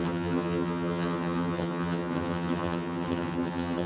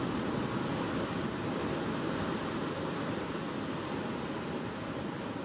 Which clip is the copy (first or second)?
first